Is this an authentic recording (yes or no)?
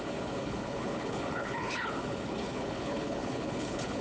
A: no